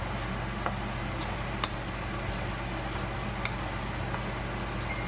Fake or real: real